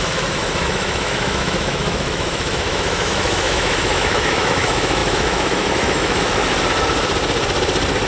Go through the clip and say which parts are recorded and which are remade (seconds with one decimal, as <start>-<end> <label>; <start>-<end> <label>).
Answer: 0.0-6.4 remade; 6.4-8.1 recorded